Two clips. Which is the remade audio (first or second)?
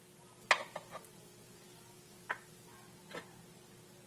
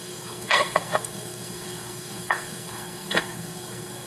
second